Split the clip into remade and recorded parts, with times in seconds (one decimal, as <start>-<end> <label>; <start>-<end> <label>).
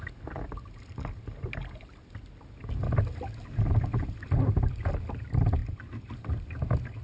0.0-7.0 recorded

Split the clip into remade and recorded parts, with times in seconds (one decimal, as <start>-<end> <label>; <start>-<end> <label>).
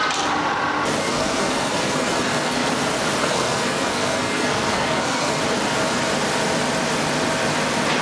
0.0-1.0 recorded; 1.0-2.7 remade; 2.7-3.2 recorded; 3.2-5.4 remade; 5.4-8.0 recorded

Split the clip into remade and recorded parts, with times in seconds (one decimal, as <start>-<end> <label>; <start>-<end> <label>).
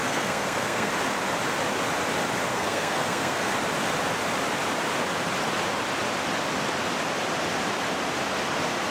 0.0-0.9 remade; 0.9-2.5 recorded; 2.5-3.5 remade; 3.5-8.9 recorded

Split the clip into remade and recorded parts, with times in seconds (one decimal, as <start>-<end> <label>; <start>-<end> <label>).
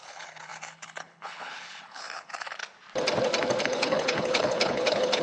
0.0-2.6 remade; 2.6-3.6 recorded; 3.6-5.2 remade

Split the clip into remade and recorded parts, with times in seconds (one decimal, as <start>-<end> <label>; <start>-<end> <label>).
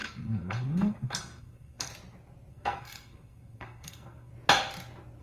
0.0-1.9 remade; 1.9-2.5 recorded; 2.5-4.3 remade; 4.3-5.2 recorded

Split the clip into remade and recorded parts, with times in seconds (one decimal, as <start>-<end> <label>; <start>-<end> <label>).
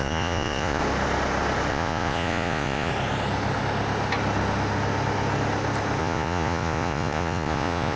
0.0-0.8 remade; 0.8-1.7 recorded; 1.7-2.9 remade; 2.9-6.0 recorded; 6.0-8.0 remade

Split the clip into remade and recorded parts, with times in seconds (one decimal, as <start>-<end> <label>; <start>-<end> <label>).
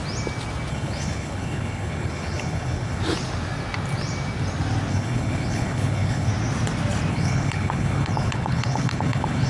0.0-0.7 recorded; 0.7-3.0 remade; 3.0-4.9 recorded; 4.9-6.3 remade; 6.3-7.1 recorded; 7.1-9.5 remade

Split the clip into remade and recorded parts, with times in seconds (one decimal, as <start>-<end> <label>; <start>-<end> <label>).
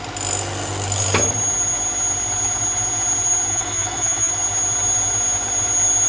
0.0-3.5 recorded; 3.5-4.3 remade; 4.3-6.1 recorded